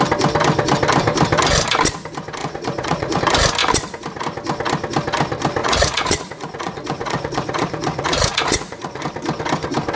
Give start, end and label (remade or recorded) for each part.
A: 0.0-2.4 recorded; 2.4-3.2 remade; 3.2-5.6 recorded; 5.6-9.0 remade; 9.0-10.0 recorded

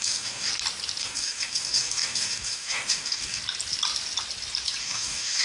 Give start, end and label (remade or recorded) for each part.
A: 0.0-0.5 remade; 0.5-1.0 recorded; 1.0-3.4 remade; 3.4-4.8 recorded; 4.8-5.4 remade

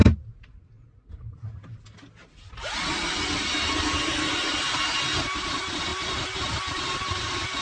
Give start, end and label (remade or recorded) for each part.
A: 0.0-7.6 recorded

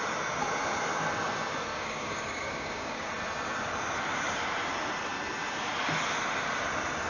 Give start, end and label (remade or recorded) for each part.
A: 0.0-1.7 recorded; 1.7-3.1 remade; 3.1-7.1 recorded

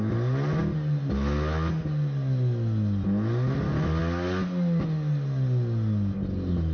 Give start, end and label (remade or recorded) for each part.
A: 0.0-6.7 recorded

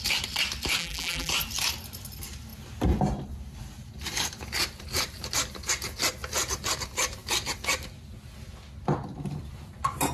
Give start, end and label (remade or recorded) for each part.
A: 0.0-0.8 recorded; 0.8-1.3 remade; 1.3-10.1 recorded